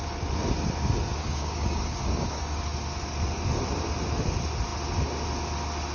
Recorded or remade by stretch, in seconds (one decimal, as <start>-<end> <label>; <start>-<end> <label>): 0.0-1.2 recorded; 1.2-2.6 remade; 2.6-5.9 recorded